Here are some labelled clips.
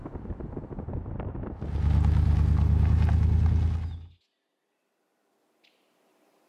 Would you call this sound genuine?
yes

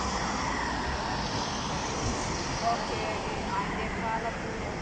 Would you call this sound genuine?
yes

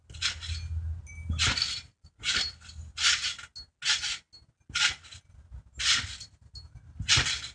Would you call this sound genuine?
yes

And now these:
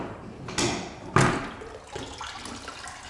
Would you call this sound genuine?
yes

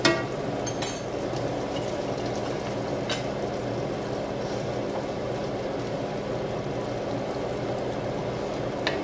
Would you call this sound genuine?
yes